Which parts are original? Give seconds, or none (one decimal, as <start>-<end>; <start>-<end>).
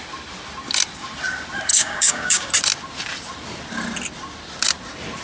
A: 0.0-1.7; 2.5-5.2